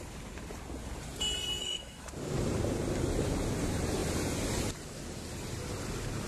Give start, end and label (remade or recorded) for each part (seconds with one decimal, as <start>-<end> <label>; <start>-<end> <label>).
0.0-1.6 recorded; 1.6-2.1 remade; 2.1-6.3 recorded